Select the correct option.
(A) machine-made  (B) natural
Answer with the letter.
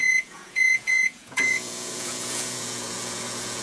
A